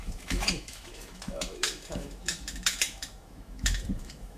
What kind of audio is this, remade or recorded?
remade